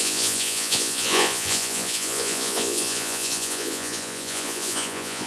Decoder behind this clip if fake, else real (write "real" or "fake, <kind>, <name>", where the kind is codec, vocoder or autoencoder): fake, vocoder, Vocos